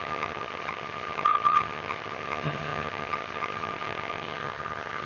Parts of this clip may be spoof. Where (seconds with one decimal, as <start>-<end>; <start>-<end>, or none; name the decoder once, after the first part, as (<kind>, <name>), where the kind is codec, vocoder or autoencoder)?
0.0-5.1 (vocoder, HiFi-GAN)